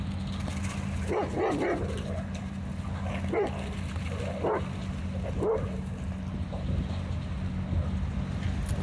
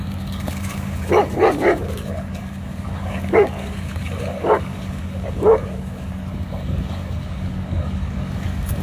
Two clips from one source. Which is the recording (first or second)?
first